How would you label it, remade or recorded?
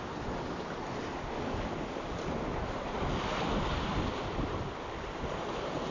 recorded